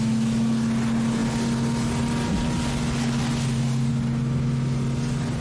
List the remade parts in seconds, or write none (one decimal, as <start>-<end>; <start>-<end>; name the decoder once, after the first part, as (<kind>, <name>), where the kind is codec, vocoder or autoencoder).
none